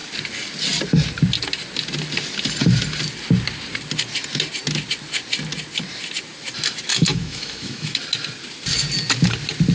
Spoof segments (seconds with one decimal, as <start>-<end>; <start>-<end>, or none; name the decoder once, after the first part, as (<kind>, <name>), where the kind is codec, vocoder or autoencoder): 6.9-8.0 (autoencoder, DAC-VAE)